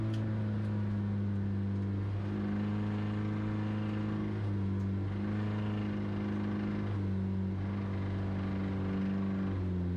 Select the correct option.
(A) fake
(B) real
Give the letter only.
B